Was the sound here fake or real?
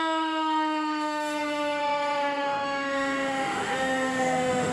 fake